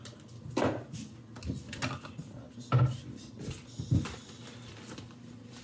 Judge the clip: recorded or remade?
recorded